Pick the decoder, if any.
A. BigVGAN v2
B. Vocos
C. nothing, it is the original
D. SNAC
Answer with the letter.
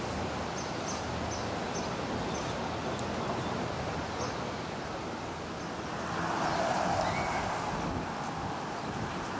C